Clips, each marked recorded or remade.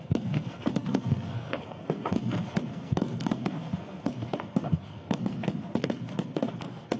remade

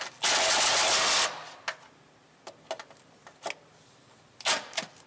recorded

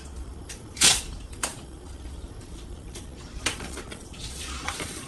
remade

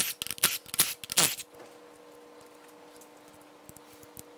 recorded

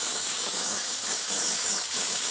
remade